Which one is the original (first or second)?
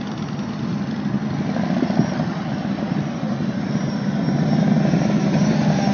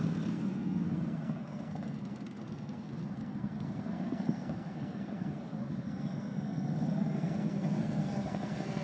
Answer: first